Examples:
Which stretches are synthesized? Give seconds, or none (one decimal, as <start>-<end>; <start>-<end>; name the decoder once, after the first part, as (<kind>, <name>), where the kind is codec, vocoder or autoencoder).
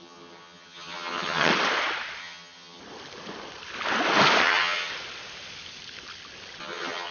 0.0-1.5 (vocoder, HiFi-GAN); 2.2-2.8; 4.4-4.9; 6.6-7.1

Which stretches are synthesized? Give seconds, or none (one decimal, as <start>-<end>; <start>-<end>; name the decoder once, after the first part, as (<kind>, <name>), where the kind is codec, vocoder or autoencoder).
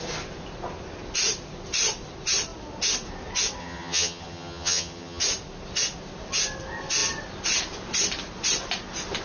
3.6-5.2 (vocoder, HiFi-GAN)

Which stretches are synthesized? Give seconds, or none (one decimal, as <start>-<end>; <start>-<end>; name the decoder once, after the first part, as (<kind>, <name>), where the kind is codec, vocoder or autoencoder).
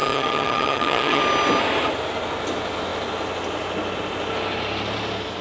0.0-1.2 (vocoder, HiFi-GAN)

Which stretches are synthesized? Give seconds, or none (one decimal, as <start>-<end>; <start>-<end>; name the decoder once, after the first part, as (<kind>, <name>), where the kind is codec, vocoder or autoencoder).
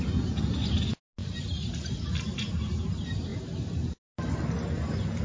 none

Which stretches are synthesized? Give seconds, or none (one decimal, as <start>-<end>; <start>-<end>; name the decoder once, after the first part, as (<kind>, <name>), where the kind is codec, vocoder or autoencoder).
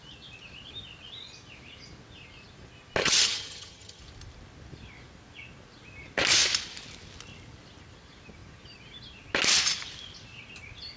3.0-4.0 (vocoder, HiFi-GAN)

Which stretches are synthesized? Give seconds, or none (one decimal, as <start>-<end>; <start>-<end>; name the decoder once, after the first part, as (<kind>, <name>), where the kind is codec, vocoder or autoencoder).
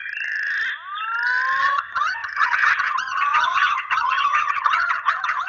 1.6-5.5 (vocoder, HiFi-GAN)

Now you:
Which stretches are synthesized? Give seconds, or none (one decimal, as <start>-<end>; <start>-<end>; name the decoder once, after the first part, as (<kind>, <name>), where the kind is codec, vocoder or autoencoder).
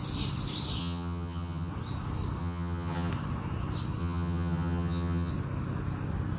0.8-1.7 (vocoder, HiFi-GAN); 2.4-3.1; 4.0-5.3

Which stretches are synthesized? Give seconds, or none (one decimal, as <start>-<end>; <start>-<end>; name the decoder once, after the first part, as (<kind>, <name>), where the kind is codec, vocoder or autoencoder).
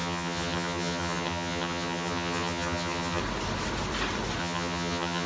0.0-3.2 (vocoder, HiFi-GAN); 4.4-5.3